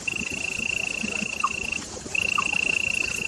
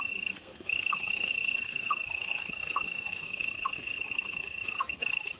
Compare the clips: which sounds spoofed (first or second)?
second